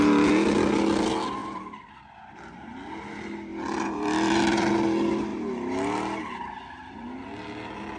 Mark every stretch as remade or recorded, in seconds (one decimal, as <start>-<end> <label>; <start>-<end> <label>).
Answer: 0.0-1.4 recorded; 1.4-1.9 remade; 1.9-3.5 recorded; 3.5-4.7 remade; 4.7-8.0 recorded